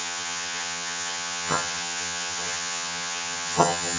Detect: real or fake fake